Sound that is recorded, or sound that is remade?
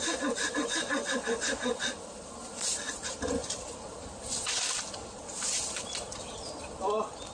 recorded